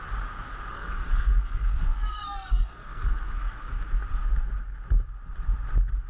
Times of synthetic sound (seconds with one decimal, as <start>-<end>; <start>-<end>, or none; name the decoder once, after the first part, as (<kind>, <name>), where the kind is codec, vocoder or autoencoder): 0.7-3.7 (codec, SNAC)